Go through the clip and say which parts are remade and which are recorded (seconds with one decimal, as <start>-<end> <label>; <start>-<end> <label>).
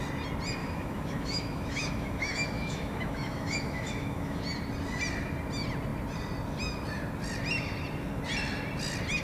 0.0-0.6 recorded; 0.6-4.4 remade; 4.4-9.2 recorded